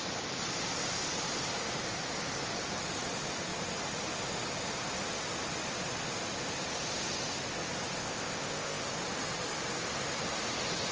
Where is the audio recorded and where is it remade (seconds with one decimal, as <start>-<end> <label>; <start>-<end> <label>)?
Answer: 0.0-8.0 recorded; 8.0-8.8 remade; 8.8-10.9 recorded